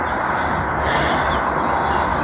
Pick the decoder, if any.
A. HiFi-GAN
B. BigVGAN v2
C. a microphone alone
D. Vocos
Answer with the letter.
C